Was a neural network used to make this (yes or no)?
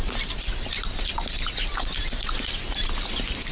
no